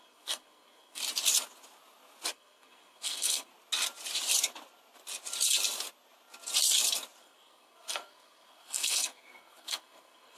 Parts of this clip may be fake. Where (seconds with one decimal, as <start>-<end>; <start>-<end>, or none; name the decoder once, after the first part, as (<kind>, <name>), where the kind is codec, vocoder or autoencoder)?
0.0-1.0 (codec, SNAC); 2.3-3.5; 7.2-10.4

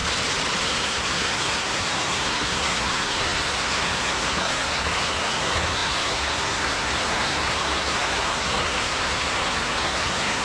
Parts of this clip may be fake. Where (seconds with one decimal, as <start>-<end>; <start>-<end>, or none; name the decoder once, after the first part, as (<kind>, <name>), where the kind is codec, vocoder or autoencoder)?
0.6-10.4 (codec, SNAC)